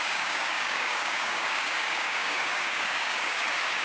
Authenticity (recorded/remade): remade